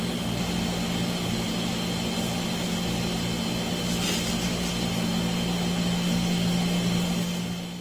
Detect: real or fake real